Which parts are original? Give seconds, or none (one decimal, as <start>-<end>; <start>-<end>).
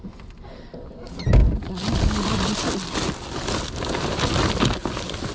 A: 0.0-5.3